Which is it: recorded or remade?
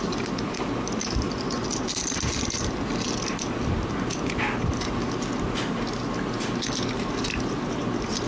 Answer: recorded